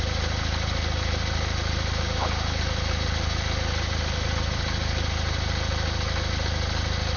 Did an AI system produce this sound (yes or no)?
no